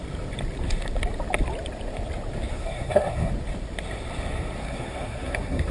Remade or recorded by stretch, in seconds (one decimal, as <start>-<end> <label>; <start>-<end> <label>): 0.0-2.5 recorded; 2.5-3.3 remade; 3.3-4.6 recorded; 4.6-5.7 remade